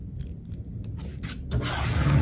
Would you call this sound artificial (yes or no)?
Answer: no